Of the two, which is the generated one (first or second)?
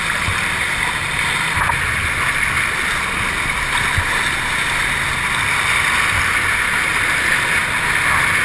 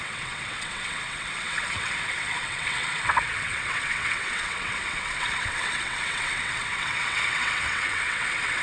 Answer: second